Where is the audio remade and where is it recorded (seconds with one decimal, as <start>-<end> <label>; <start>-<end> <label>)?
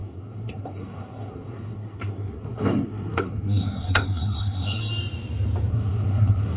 0.0-4.8 remade; 4.8-5.7 recorded; 5.7-6.6 remade